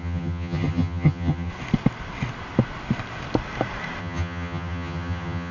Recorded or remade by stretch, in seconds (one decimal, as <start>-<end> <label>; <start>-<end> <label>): 0.0-1.5 remade; 1.5-4.0 recorded; 4.0-5.5 remade